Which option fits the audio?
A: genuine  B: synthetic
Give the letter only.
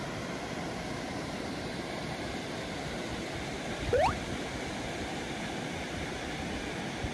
B